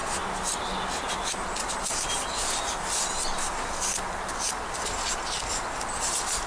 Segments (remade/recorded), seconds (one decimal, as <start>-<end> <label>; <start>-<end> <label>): 0.0-6.5 recorded